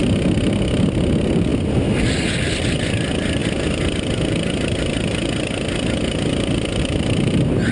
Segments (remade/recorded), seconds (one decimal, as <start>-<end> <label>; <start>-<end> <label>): 0.0-7.7 recorded